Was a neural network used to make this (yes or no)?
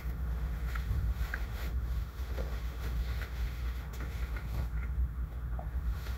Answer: yes